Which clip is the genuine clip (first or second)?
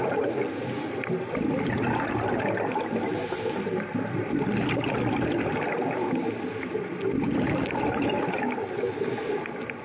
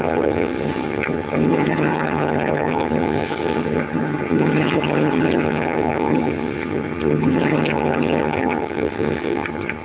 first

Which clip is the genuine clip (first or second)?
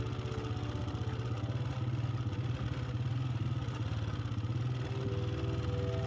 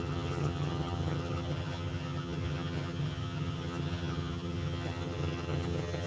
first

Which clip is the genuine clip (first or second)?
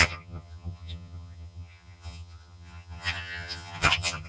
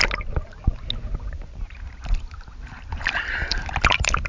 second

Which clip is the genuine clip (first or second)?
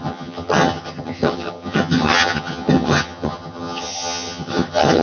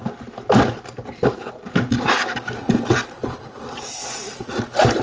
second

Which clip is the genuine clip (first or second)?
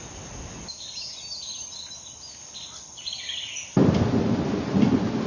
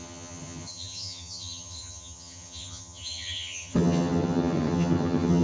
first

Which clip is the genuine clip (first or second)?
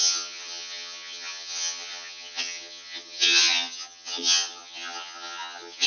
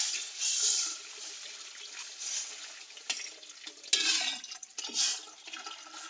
second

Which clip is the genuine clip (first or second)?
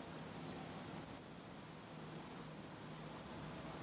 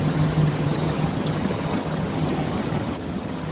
first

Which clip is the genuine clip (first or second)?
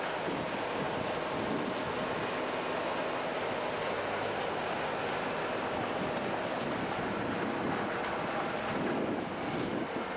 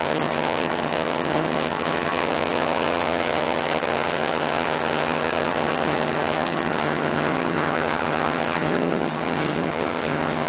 first